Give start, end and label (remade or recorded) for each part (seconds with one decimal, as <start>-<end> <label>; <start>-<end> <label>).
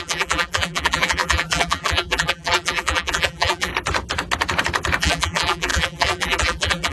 0.0-3.7 remade; 3.7-5.0 recorded; 5.0-6.9 remade